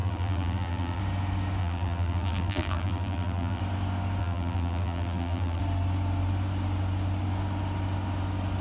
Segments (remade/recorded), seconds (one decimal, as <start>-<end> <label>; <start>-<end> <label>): 0.0-1.0 remade; 1.0-1.6 recorded; 1.6-3.6 remade; 3.6-4.2 recorded; 4.2-5.6 remade; 5.6-8.6 recorded